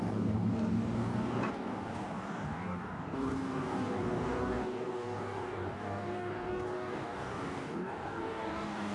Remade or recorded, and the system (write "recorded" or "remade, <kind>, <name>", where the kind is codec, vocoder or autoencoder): remade, codec, DAC